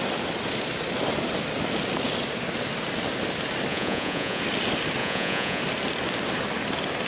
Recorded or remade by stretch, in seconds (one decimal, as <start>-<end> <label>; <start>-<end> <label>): 0.0-3.7 recorded; 3.7-4.4 remade; 4.4-5.0 recorded; 5.0-5.6 remade; 5.6-7.1 recorded